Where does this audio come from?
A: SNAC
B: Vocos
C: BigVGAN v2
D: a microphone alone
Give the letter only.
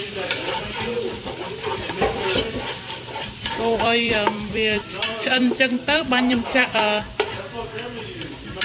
C